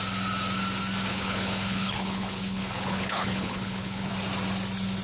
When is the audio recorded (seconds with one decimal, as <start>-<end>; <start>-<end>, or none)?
0.0-1.1; 4.1-5.0